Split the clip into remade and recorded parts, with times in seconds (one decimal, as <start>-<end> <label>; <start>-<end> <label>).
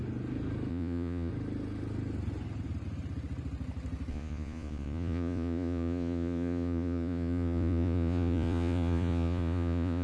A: 0.0-0.7 recorded; 0.7-1.3 remade; 1.3-4.1 recorded; 4.1-10.0 remade